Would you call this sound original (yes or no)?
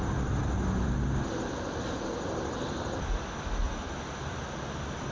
yes